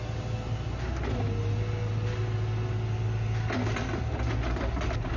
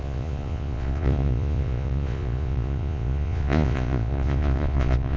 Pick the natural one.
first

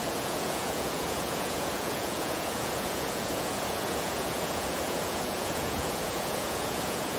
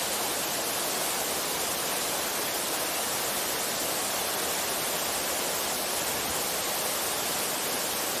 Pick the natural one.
second